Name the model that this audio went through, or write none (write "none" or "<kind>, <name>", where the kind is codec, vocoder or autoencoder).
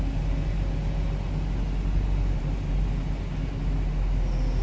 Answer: none